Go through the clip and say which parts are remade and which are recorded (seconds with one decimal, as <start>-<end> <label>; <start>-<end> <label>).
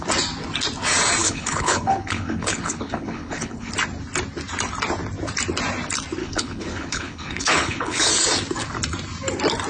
0.0-1.2 recorded; 1.2-3.7 remade; 3.7-6.2 recorded; 6.2-8.1 remade; 8.1-9.7 recorded